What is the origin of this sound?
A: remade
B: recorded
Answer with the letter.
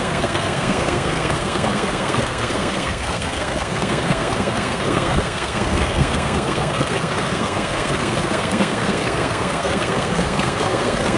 A